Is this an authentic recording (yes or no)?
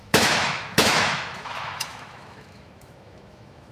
no